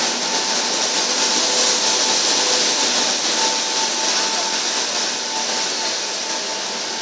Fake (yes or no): no